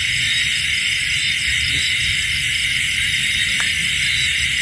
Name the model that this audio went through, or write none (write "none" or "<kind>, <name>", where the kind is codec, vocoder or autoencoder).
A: none